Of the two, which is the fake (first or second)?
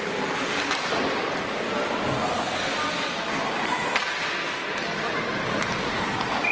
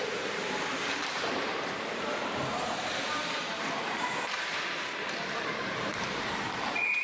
second